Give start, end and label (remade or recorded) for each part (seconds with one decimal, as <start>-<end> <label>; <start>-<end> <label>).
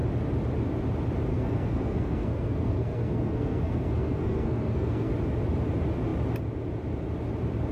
0.0-1.3 recorded; 1.3-5.1 remade; 5.1-7.7 recorded